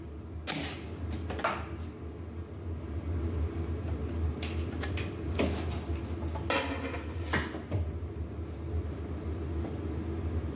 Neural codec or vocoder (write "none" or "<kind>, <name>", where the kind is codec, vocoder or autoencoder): none